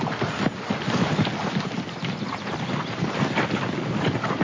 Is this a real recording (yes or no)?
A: yes